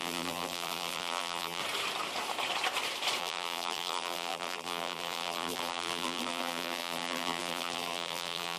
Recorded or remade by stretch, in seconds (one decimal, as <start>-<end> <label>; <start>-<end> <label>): 0.0-1.6 remade; 1.6-3.2 recorded; 3.2-8.6 remade